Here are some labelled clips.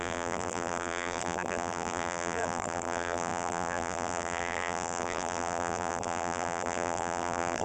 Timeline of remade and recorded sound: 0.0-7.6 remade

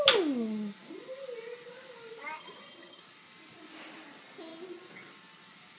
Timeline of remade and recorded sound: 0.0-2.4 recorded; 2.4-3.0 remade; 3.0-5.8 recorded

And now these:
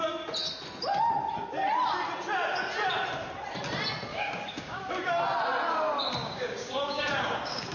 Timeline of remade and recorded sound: 0.0-4.1 recorded; 4.1-4.9 remade; 4.9-6.2 recorded; 6.2-7.7 remade